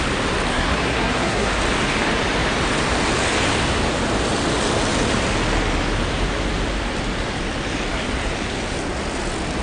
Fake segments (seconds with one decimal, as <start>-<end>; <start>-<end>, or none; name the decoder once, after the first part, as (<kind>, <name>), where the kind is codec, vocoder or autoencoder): 0.5-1.5 (codec, SNAC)